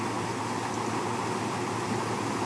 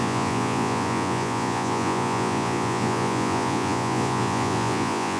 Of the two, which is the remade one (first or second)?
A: second